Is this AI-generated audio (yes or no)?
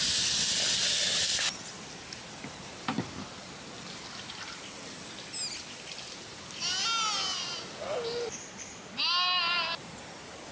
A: no